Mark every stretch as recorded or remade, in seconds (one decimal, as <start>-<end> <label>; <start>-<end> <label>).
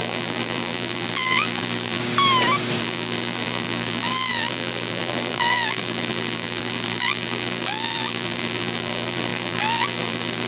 0.0-2.0 remade; 2.0-2.8 recorded; 2.8-10.5 remade